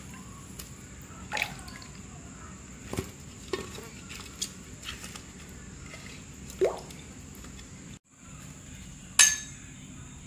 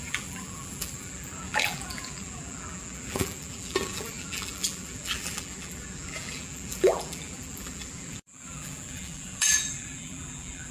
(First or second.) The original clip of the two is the first